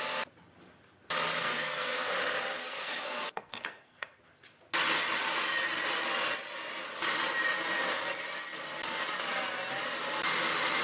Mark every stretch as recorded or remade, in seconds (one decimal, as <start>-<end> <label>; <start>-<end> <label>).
0.0-1.4 recorded; 1.4-2.1 remade; 2.1-2.6 recorded; 2.6-4.2 remade; 4.2-10.8 recorded